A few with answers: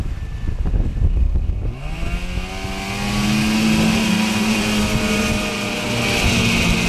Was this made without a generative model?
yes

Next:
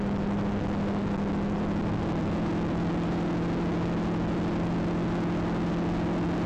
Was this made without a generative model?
yes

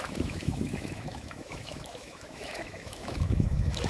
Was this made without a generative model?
no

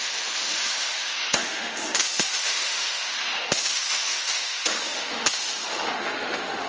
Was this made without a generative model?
no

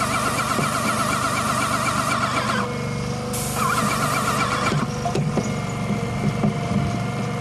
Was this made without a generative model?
yes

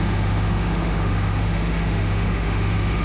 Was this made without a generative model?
no